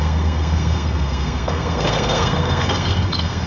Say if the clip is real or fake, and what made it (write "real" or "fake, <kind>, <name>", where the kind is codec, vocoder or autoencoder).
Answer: fake, codec, SNAC